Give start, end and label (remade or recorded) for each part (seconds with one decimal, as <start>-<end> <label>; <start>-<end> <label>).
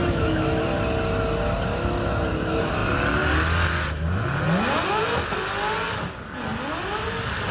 0.0-0.6 remade; 0.6-7.5 recorded